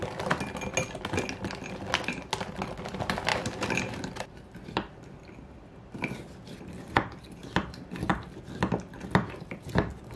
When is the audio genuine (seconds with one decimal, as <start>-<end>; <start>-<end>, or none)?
0.0-3.3; 5.9-10.2